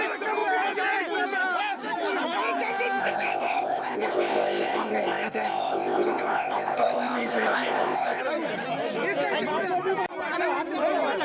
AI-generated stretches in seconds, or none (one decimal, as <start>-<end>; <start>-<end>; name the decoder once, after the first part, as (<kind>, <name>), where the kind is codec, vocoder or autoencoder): 3.0-8.2 (codec, ZipCodec)